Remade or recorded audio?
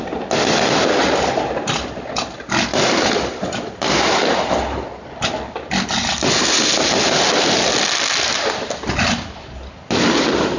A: recorded